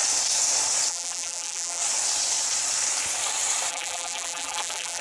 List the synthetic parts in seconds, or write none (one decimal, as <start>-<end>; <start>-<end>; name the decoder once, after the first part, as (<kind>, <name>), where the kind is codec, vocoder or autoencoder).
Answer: 0.9-1.8 (vocoder, BigVGAN v2); 3.7-5.0

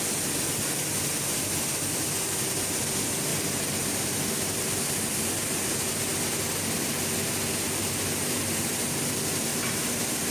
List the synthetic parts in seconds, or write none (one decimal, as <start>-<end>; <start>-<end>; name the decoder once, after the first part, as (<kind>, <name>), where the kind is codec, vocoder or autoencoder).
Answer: 9.5-10.3 (vocoder, BigVGAN v2)

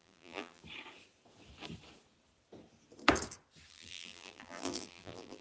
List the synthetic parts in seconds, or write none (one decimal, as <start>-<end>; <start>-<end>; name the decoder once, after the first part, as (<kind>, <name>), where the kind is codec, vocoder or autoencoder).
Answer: 0.0-0.6 (vocoder, BigVGAN v2); 3.7-5.4

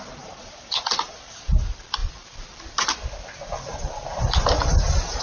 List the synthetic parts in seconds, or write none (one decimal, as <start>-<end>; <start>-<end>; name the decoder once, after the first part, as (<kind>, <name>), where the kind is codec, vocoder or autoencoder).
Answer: 0.0-1.5 (vocoder, BigVGAN v2)

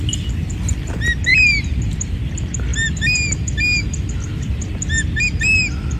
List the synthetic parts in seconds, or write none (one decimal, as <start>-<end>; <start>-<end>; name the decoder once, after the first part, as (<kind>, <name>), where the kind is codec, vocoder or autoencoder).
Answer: 1.3-2.2 (vocoder, BigVGAN v2)

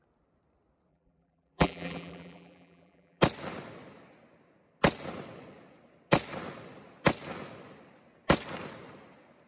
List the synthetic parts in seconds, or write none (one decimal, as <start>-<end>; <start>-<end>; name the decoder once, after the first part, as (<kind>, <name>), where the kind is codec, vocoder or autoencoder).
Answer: 0.9-3.2 (vocoder, BigVGAN v2)